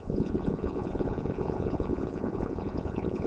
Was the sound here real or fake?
fake